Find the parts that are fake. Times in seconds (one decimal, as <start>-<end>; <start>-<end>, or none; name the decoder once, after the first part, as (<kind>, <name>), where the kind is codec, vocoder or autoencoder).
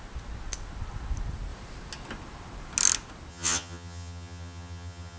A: 3.3-5.2 (vocoder, HiFi-GAN)